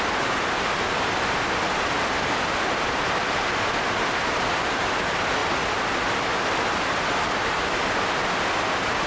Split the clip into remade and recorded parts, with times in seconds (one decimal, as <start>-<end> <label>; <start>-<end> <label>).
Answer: 0.0-9.1 recorded